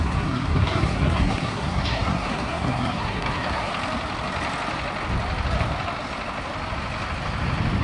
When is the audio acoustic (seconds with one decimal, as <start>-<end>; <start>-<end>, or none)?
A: 3.7-7.8